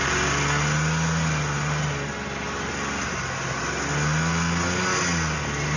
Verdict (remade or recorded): recorded